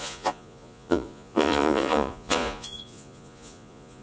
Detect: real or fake fake